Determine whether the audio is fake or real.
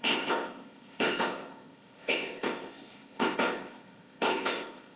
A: fake